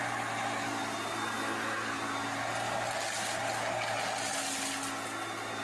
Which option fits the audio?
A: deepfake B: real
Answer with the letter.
B